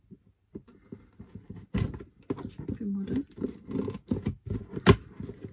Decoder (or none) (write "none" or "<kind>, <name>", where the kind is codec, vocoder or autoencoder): none